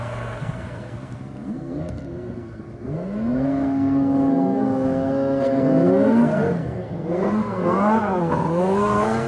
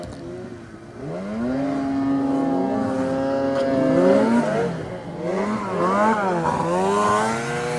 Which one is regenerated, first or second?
first